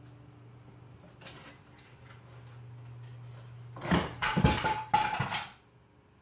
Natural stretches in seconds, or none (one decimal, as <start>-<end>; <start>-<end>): 0.0-6.2